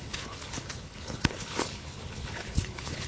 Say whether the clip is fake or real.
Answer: fake